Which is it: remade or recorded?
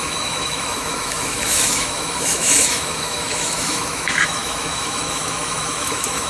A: remade